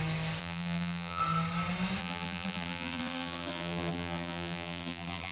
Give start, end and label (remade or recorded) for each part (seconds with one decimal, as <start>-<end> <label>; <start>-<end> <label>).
0.0-0.4 recorded; 0.4-1.2 remade; 1.2-2.0 recorded; 2.0-5.3 remade